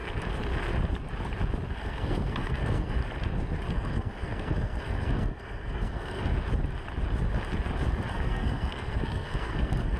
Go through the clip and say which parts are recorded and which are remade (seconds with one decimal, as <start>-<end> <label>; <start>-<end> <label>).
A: 0.0-1.7 recorded; 1.7-3.0 remade; 3.0-3.7 recorded; 3.7-6.3 remade; 6.3-8.1 recorded; 8.1-10.0 remade